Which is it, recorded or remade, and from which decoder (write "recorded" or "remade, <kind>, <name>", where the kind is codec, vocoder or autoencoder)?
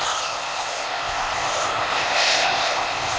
remade, codec, ZipCodec